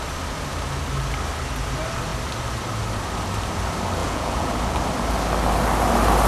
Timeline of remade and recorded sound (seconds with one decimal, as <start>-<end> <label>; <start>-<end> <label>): 0.0-4.0 recorded; 4.0-4.5 remade; 4.5-6.3 recorded